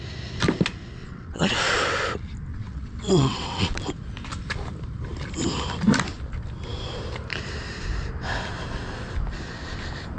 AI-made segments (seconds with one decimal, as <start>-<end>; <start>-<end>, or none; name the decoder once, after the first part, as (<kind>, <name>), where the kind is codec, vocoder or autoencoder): 1.0-1.5 (vocoder, WaveNeXt); 2.5-3.8